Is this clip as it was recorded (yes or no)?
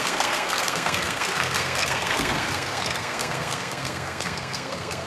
no